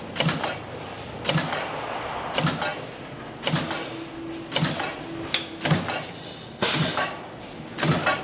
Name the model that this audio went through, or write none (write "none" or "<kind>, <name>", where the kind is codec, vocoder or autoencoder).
none